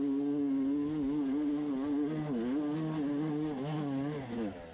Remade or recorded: recorded